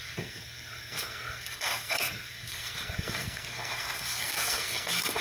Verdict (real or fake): fake